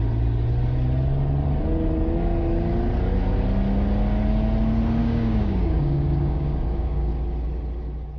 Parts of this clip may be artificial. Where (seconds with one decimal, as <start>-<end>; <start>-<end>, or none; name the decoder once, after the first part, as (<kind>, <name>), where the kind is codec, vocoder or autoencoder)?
5.0-7.1 (codec, DAC)